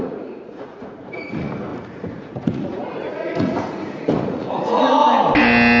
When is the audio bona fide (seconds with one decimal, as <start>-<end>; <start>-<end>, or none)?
5.0-5.8